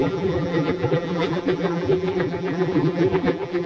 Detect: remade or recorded remade